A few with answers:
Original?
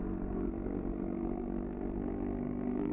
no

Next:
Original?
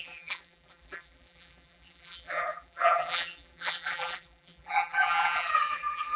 no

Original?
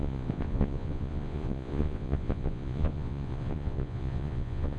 no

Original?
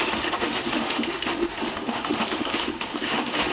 no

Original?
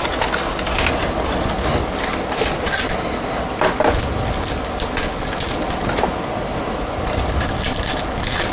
yes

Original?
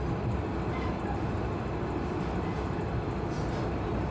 yes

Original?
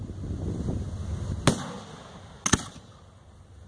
yes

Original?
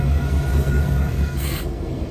no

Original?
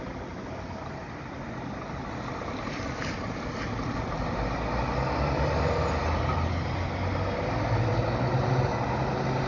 yes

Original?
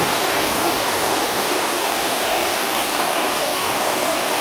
no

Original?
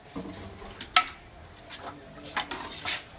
yes